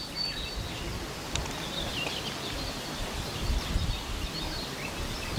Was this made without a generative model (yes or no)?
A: yes